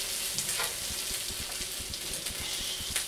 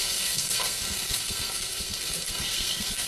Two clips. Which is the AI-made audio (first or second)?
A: second